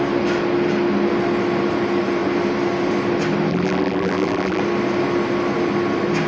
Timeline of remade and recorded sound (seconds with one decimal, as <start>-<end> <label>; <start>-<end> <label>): 0.0-3.5 recorded; 3.5-4.6 remade; 4.6-6.3 recorded